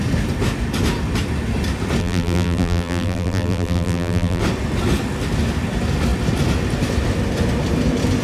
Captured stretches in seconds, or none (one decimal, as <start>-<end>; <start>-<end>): 0.0-2.0; 4.4-8.2